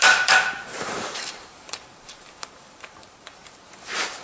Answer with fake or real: fake